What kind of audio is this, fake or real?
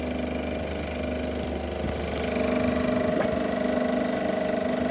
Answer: real